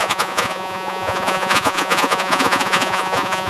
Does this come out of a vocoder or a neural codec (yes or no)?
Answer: yes